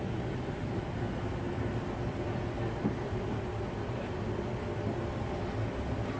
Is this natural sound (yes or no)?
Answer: yes